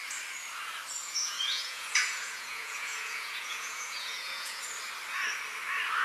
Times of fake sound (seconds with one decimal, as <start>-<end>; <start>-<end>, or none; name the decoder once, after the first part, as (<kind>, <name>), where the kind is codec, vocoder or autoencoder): 1.0-4.6 (vocoder, Vocos)